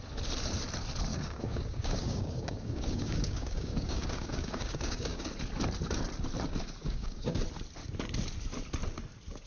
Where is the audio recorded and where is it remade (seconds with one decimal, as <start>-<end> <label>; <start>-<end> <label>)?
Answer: 0.0-1.1 recorded; 1.1-5.3 remade; 5.3-6.8 recorded; 6.8-7.4 remade; 7.4-9.5 recorded